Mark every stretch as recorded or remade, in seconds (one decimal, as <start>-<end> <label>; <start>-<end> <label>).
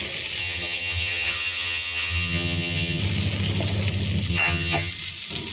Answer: 0.0-0.4 recorded; 0.4-3.0 remade; 3.0-4.3 recorded; 4.3-4.9 remade; 4.9-5.5 recorded